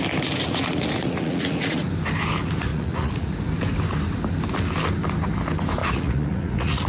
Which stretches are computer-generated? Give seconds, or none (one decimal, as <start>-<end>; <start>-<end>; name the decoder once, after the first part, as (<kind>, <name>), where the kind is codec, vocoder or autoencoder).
0.5-1.9 (vocoder, Vocos); 2.7-3.3; 5.8-6.9